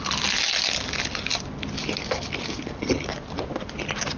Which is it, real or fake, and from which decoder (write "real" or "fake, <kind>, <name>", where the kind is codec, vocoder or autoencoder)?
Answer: real